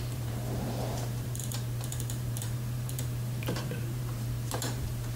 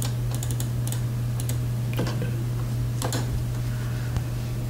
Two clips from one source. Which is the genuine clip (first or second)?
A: second